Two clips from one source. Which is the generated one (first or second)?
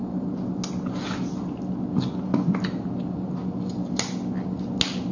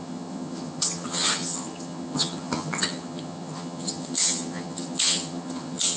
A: second